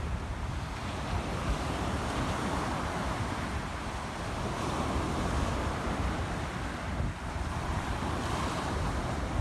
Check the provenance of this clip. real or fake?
fake